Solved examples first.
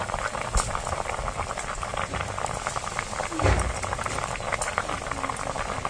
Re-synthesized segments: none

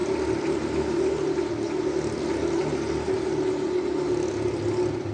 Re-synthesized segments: none

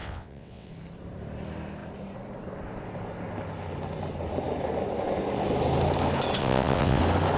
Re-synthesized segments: 0.0-0.7 (vocoder, WaveNeXt); 6.4-7.0